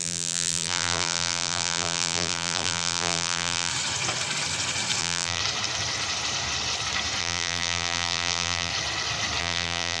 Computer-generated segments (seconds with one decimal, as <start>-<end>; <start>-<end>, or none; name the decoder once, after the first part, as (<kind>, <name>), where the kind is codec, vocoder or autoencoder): 0.0-3.7 (vocoder, BigVGAN v2); 5.0-5.4; 7.2-8.7; 9.4-10.0